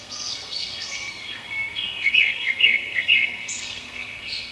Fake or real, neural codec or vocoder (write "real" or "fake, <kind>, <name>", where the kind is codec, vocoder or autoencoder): fake, codec, SNAC